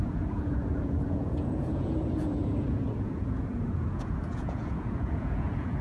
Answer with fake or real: fake